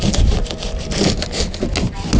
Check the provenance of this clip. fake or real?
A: real